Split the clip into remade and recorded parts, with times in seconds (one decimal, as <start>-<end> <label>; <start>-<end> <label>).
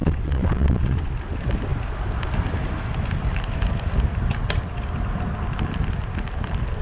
0.0-1.1 remade; 1.1-6.8 recorded